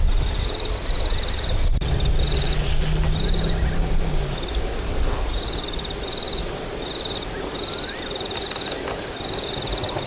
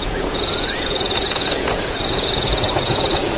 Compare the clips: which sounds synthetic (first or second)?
second